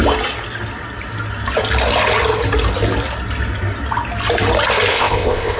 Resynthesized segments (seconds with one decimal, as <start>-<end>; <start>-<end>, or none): 4.9-5.6